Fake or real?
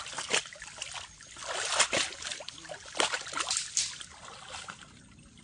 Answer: real